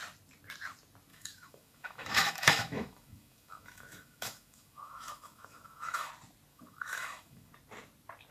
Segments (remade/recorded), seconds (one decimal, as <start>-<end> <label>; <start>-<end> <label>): 0.0-1.1 recorded; 1.1-6.1 remade; 6.1-6.5 recorded; 6.5-7.5 remade; 7.5-8.3 recorded